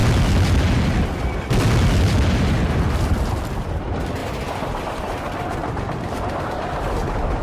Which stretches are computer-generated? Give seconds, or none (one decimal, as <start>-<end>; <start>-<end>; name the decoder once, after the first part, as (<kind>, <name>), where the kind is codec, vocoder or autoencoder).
5.6-6.4 (vocoder, BigVGAN v2)